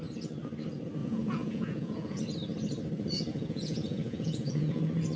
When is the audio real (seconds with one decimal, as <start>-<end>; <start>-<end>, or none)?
0.0-1.0; 2.2-3.3; 4.8-5.2